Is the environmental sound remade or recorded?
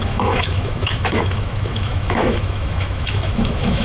remade